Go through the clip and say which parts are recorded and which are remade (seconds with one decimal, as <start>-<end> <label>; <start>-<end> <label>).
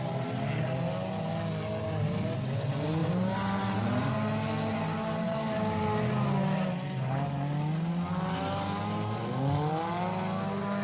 0.0-3.0 recorded; 3.0-4.1 remade; 4.1-10.8 recorded